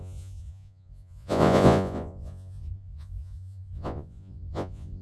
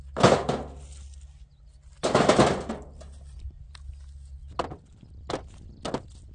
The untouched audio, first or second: second